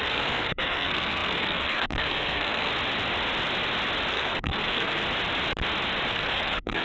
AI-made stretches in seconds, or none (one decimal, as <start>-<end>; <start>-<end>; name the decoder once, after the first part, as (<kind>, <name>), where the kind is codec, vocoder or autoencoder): 0.0-2.7 (codec, SNAC); 4.1-5.0; 6.1-6.8